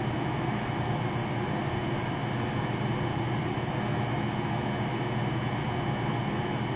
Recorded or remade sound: recorded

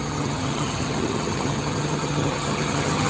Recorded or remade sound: remade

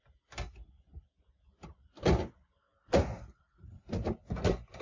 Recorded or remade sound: recorded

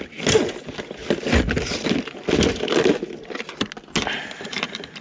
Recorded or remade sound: recorded